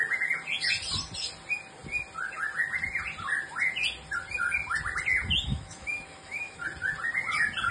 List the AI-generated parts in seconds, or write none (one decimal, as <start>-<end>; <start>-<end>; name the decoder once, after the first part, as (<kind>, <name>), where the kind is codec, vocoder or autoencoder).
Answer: 5.5-6.6 (autoencoder, DAC-VAE)